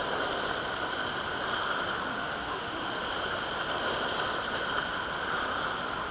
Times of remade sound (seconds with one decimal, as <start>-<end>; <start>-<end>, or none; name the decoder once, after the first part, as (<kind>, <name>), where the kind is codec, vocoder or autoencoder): 2.1-3.0 (autoencoder, DAC-VAE)